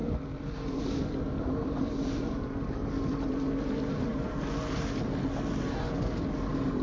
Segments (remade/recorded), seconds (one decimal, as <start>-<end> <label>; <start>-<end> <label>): 0.0-6.8 recorded

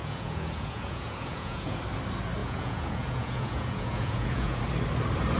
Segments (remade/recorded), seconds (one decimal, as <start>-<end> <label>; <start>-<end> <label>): 0.0-1.8 remade; 1.8-2.4 recorded; 2.4-4.6 remade; 4.6-5.4 recorded

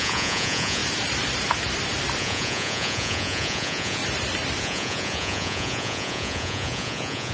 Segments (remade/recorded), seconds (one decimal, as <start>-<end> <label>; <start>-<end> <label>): 0.0-0.8 remade; 0.8-2.2 recorded; 2.2-4.0 remade; 4.0-4.6 recorded; 4.6-7.3 remade

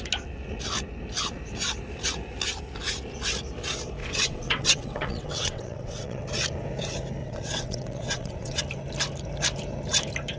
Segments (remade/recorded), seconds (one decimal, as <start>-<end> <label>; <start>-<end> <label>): 0.0-4.0 recorded; 4.0-6.2 remade; 6.2-7.2 recorded; 7.2-8.6 remade; 8.6-10.4 recorded

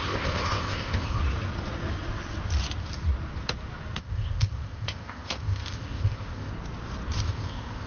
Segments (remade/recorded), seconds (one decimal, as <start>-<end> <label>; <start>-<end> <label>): 0.0-1.2 remade; 1.2-4.0 recorded; 4.0-6.5 remade; 6.5-7.2 recorded; 7.2-7.9 remade

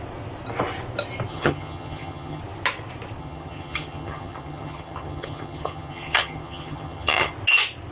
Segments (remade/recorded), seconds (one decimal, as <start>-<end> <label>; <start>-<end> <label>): 0.0-1.3 recorded; 1.3-2.4 remade; 2.4-3.2 recorded; 3.2-7.3 remade; 7.3-7.9 recorded

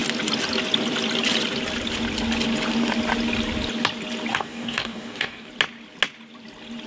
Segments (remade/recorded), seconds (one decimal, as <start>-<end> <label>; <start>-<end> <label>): 0.0-4.3 recorded; 4.3-5.5 remade; 5.5-6.9 recorded

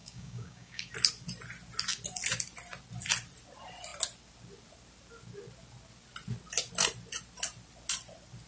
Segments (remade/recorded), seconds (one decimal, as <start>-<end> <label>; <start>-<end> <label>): 0.0-0.9 remade; 0.9-8.5 recorded